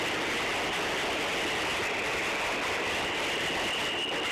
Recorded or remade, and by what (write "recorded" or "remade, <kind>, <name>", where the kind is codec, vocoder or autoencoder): recorded